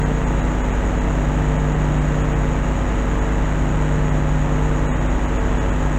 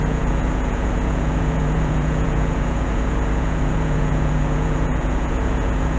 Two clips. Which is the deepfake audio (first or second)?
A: second